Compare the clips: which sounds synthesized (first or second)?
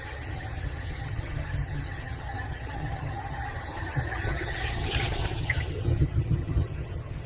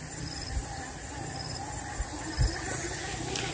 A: first